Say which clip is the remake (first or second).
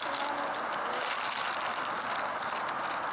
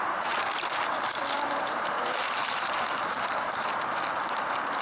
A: second